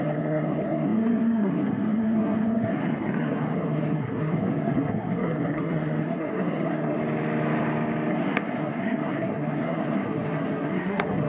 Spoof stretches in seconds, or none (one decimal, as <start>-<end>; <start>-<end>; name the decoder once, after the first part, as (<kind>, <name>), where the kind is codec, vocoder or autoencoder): 0.0-7.0 (codec, SNAC); 8.1-11.3